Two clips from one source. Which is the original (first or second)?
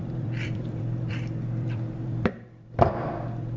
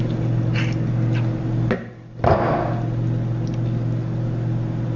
second